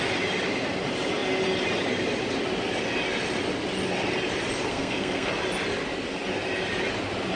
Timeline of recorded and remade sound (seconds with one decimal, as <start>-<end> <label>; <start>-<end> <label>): 0.0-4.7 recorded; 4.7-5.3 remade; 5.3-7.3 recorded